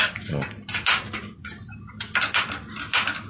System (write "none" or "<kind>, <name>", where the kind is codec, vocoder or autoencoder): none